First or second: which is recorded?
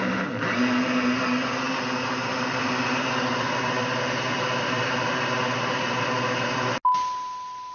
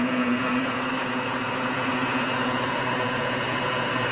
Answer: first